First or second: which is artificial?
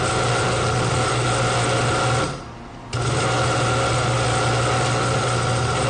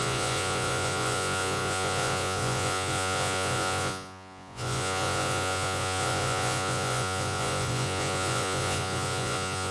second